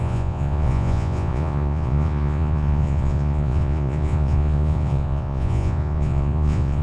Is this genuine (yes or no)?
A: no